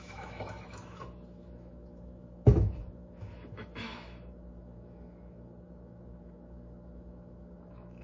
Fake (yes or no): yes